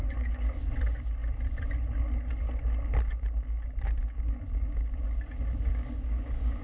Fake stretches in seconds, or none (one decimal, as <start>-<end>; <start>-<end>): 0.0-0.6; 5.7-6.6